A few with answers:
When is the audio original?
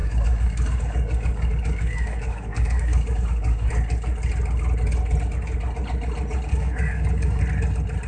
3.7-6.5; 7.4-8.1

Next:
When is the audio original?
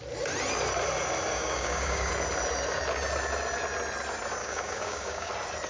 0.0-1.3; 2.1-4.4; 5.3-5.7